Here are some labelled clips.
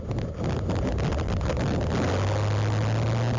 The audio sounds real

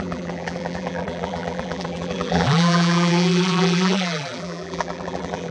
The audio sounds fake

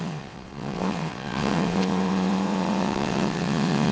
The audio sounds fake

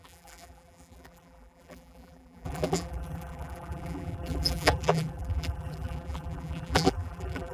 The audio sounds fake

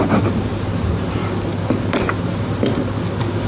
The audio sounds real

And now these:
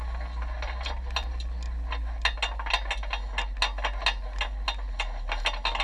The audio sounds real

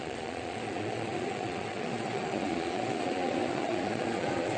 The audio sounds fake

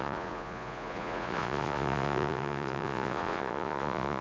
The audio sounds fake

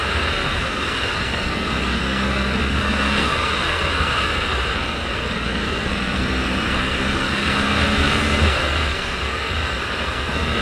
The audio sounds fake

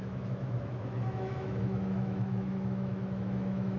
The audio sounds fake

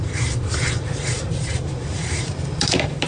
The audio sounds fake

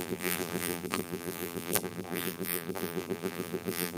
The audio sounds fake